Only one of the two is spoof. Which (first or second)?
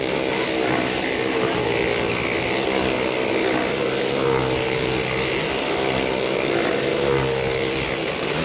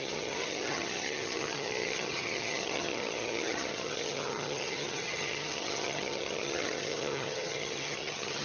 second